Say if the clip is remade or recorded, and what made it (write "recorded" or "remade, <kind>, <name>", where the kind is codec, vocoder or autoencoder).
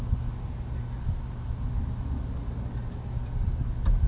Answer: recorded